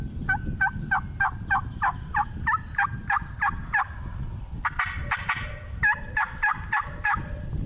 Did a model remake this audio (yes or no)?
no